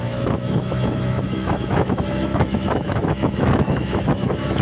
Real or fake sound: fake